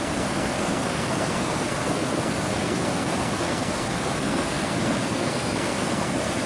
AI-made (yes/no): yes